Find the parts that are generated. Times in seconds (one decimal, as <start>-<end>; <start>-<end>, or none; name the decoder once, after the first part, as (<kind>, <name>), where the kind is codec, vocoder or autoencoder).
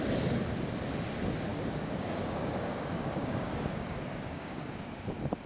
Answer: 1.5-4.7 (codec, DAC)